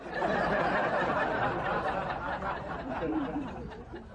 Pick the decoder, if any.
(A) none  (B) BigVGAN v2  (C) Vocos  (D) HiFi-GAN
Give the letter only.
B